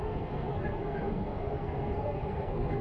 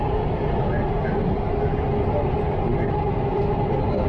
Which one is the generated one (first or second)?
first